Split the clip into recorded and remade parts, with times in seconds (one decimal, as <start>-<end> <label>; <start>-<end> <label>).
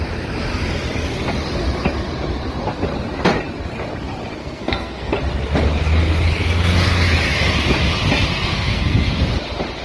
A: 0.0-4.4 recorded; 4.4-5.1 remade; 5.1-8.3 recorded; 8.3-9.2 remade; 9.2-9.8 recorded